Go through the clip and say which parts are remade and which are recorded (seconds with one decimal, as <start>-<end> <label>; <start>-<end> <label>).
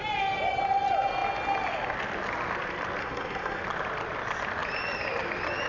0.0-3.0 recorded; 3.0-3.6 remade; 3.6-5.7 recorded